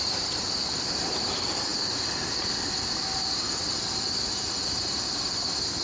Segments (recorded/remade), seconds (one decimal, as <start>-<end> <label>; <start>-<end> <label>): 0.0-5.8 recorded